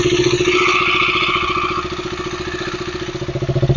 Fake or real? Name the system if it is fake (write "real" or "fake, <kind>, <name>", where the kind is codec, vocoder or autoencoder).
real